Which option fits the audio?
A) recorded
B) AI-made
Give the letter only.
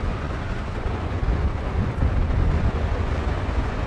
B